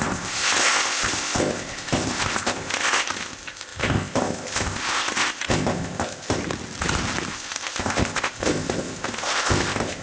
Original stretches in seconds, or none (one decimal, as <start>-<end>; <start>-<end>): 6.4-7.3